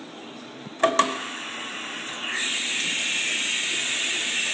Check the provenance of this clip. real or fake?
real